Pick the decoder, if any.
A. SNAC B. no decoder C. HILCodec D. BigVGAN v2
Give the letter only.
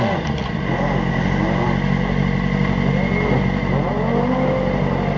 B